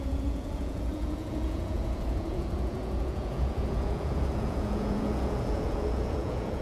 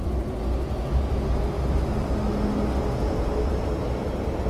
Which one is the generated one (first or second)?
first